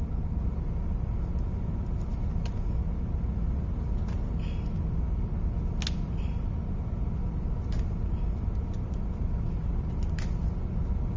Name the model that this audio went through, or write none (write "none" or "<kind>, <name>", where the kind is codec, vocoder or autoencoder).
none